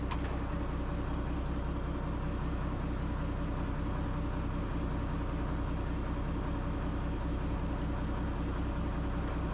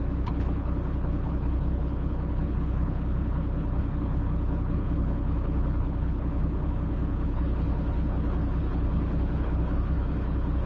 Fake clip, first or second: second